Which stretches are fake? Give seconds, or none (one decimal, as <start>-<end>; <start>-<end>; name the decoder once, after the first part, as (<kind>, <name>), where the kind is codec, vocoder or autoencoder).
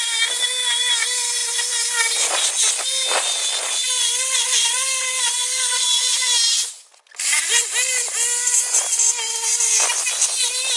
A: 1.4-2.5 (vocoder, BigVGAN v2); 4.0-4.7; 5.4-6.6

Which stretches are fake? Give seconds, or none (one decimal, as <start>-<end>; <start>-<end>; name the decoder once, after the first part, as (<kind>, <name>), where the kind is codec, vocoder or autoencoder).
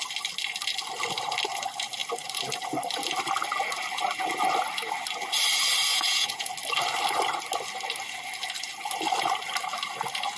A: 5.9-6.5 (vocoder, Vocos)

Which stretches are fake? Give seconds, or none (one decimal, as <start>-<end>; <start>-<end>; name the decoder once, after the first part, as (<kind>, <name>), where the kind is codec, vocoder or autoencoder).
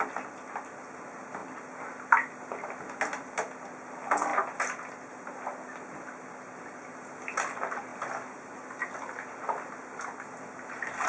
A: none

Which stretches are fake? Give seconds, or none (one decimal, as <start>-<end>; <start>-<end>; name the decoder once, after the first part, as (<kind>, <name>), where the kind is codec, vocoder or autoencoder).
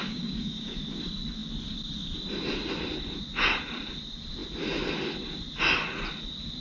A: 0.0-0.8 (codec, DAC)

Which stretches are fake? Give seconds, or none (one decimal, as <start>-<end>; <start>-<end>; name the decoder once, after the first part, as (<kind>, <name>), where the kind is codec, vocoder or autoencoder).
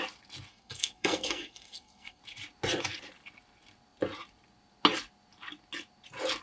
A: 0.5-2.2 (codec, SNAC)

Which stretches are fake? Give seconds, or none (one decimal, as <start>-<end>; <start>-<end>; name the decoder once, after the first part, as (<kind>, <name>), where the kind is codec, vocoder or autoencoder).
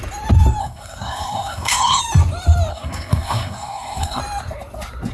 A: 0.6-2.0 (codec, SNAC); 2.7-4.2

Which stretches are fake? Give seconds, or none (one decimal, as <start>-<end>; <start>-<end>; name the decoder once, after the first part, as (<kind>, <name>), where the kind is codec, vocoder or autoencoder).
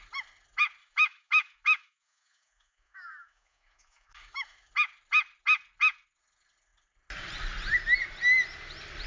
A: 0.8-4.7 (autoencoder, DAC-VAE)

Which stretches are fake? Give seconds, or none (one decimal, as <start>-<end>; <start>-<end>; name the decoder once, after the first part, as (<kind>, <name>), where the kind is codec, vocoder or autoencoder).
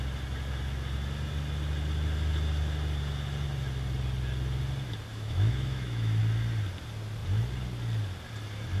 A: 5.1-6.2 (autoencoder, DAC-VAE)